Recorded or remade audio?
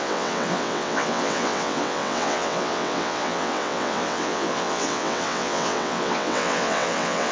remade